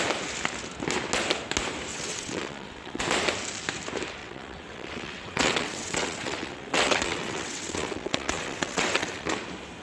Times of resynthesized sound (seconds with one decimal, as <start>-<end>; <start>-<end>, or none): 1.9-3.0; 4.2-9.3